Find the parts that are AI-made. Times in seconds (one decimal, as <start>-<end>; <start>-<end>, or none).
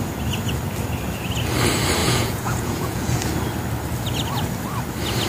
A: 2.0-3.2